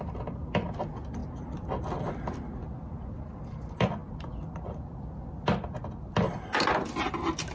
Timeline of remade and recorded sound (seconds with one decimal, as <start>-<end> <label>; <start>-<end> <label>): 0.0-7.5 recorded